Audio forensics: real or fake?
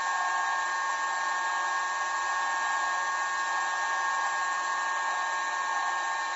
real